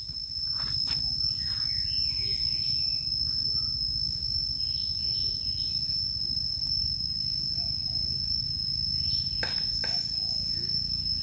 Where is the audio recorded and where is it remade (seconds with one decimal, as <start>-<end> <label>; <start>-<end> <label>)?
0.0-11.2 recorded